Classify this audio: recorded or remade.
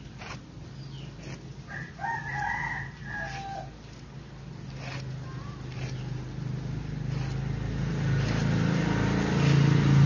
recorded